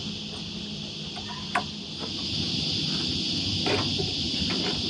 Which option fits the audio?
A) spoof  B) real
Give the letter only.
B